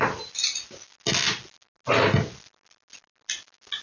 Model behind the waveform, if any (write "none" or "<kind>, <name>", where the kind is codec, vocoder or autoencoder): none